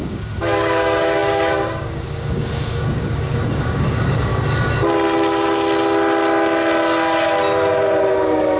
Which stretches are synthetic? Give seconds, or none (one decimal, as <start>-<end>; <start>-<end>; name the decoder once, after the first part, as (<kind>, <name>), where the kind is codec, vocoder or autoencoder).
0.0-4.3 (codec, DAC); 8.1-8.6